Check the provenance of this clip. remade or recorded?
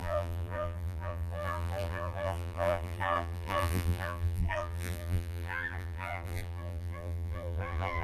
remade